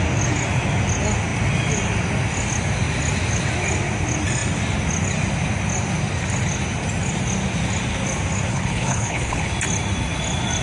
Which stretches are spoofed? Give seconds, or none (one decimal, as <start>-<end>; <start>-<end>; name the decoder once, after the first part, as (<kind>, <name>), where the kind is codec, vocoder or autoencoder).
8.5-9.5 (codec, HILCodec)

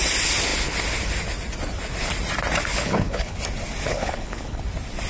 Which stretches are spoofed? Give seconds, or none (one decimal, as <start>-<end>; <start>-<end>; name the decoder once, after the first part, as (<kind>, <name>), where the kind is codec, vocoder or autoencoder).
2.7-3.4 (codec, HILCodec); 3.9-4.6

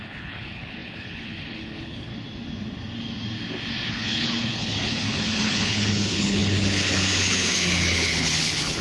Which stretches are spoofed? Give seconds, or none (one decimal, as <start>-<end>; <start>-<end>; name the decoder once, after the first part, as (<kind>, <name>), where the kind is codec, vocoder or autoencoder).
0.0-2.1 (codec, HILCodec); 3.9-8.8

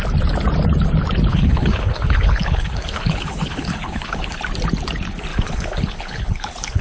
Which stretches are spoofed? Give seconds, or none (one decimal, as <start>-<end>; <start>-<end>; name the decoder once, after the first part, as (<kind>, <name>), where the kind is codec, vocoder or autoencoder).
1.3-4.4 (codec, HILCodec); 5.3-6.8

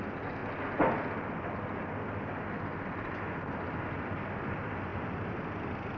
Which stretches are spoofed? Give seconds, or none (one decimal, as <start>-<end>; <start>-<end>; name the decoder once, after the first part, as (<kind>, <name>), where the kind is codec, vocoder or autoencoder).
none